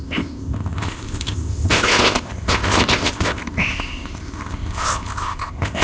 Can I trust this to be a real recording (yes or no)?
no